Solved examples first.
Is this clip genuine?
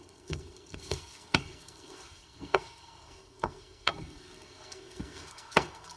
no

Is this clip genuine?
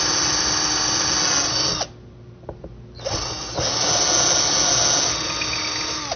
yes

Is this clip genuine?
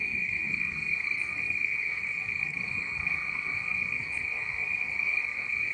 no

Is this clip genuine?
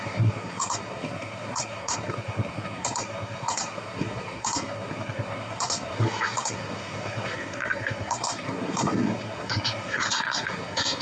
no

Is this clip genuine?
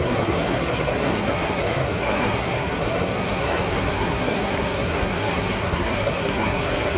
no